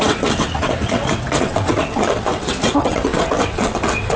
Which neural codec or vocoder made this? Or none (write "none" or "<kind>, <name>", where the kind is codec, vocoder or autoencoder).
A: vocoder, WaveNeXt